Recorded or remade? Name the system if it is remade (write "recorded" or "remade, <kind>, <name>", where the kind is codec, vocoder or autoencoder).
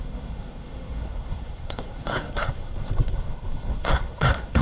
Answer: remade, codec, SNAC